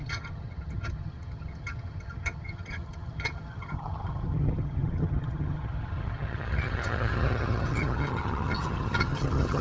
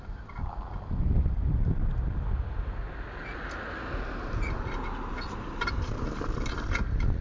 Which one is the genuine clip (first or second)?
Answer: second